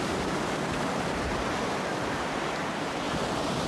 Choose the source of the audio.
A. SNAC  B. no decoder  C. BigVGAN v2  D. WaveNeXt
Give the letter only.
B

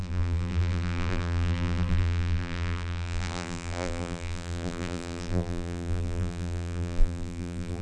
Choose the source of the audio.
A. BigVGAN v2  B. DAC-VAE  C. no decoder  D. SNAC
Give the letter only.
A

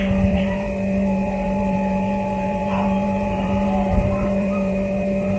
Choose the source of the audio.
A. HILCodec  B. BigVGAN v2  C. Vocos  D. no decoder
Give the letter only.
B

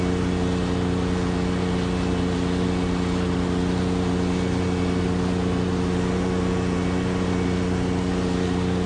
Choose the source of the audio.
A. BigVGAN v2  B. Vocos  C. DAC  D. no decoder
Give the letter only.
D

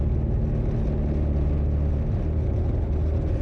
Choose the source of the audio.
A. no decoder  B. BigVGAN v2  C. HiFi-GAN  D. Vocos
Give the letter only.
A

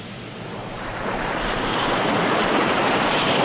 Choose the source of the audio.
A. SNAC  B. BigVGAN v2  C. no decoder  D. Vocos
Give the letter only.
B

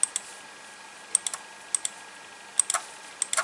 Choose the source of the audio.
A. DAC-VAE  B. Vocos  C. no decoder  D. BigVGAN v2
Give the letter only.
C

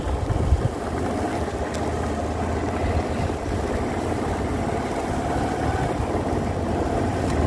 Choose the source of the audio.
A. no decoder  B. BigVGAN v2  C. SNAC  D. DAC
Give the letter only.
A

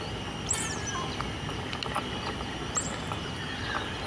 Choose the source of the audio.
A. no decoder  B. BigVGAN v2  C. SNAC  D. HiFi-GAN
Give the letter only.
A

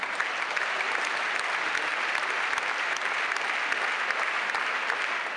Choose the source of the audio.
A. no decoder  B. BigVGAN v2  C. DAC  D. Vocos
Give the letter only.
A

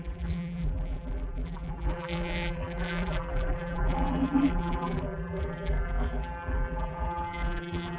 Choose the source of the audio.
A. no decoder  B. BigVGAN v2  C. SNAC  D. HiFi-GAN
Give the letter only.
B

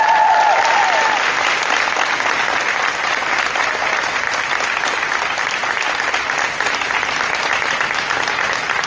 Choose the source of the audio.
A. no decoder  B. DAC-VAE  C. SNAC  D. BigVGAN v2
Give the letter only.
A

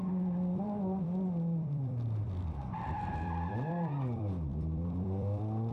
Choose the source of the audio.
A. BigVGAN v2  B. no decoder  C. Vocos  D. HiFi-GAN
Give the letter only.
A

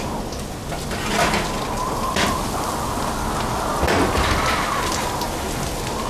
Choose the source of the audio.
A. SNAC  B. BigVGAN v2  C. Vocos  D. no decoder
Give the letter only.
D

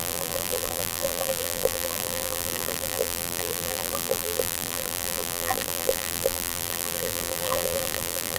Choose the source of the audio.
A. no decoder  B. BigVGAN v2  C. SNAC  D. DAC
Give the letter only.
B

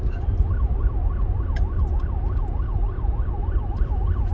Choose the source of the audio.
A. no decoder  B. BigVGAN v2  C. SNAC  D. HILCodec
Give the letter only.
B